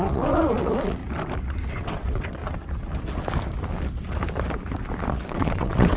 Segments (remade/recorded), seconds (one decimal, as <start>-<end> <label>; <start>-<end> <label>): 0.0-1.0 remade; 1.0-1.7 recorded; 1.7-2.4 remade; 2.4-5.1 recorded; 5.1-6.0 remade